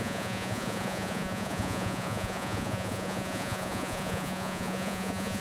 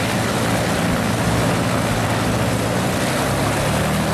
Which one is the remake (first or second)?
first